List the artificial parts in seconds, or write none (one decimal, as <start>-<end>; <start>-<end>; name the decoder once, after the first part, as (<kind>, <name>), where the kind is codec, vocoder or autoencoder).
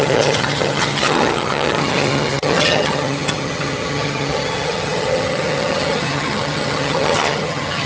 0.0-7.9 (vocoder, HiFi-GAN)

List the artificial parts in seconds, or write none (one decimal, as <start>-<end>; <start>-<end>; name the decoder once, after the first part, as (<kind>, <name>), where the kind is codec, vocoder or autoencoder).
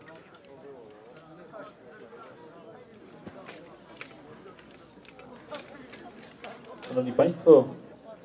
none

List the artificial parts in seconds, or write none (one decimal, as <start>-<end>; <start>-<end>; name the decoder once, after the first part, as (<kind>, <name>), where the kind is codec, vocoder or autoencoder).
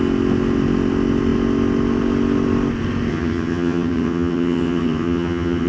3.1-5.7 (vocoder, HiFi-GAN)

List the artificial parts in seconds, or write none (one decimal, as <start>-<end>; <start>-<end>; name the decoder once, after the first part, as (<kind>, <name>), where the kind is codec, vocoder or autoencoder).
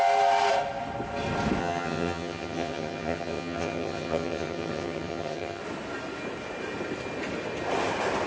1.6-5.6 (vocoder, HiFi-GAN)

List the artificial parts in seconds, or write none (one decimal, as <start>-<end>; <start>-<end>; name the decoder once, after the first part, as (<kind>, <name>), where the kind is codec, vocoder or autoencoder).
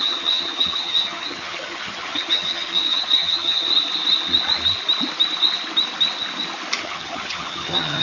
0.0-3.7 (vocoder, HiFi-GAN); 6.8-8.0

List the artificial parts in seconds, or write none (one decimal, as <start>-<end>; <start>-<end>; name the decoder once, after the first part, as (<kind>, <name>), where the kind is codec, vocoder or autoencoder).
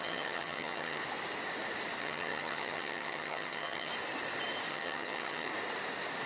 0.0-1.0 (vocoder, HiFi-GAN); 2.0-3.9; 4.7-5.5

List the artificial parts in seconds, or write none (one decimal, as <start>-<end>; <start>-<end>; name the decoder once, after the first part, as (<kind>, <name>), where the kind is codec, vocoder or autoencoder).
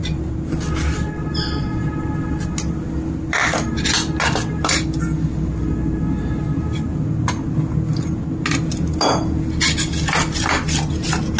none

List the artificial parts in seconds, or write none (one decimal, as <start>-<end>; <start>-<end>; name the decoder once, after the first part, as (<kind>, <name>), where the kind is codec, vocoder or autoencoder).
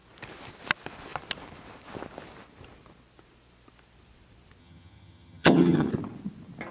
4.6-5.9 (vocoder, HiFi-GAN)